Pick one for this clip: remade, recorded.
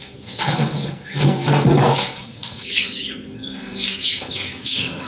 remade